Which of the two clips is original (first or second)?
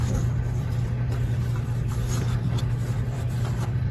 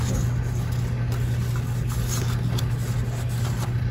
second